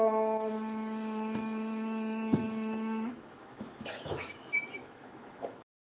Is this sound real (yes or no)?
no